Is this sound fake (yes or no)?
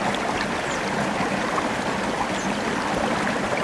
no